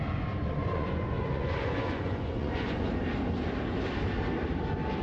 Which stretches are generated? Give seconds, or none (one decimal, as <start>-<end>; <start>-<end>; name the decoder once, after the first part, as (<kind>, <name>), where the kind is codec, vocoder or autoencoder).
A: 0.4-2.9 (vocoder, Vocos)